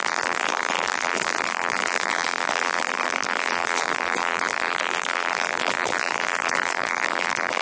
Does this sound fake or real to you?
fake